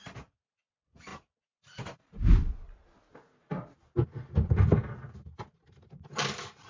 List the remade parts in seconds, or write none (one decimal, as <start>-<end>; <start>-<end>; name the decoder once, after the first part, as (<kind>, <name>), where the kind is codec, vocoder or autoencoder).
none